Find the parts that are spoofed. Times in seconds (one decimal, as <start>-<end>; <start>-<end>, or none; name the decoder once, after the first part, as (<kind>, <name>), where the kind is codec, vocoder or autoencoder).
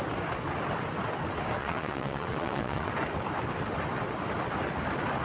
1.6-2.9 (vocoder, WaveNeXt)